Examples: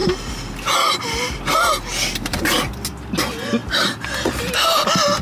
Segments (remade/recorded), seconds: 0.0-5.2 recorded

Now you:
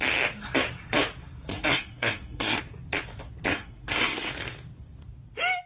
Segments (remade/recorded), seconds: 0.0-1.5 recorded; 1.5-2.6 remade; 2.6-3.5 recorded; 3.5-4.3 remade; 4.3-5.7 recorded

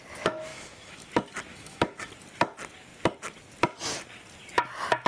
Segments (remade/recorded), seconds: 0.0-0.5 recorded; 0.5-1.1 remade; 1.1-1.5 recorded; 1.5-2.1 remade; 2.1-5.1 recorded

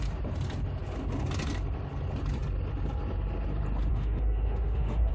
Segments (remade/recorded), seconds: 0.0-3.9 recorded; 3.9-5.1 remade

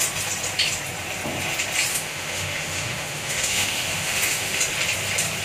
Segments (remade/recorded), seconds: 0.0-1.9 recorded; 1.9-4.6 remade; 4.6-5.4 recorded